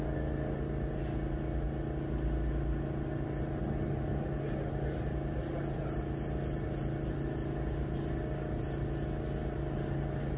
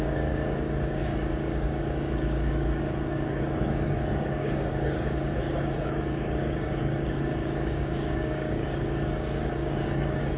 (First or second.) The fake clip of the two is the second